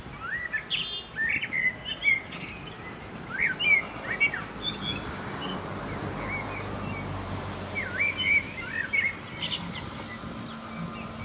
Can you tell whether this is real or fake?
real